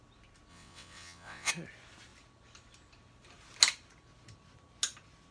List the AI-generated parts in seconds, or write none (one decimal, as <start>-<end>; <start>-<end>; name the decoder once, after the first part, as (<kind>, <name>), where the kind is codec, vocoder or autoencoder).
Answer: 0.5-1.5 (vocoder, WaveNeXt)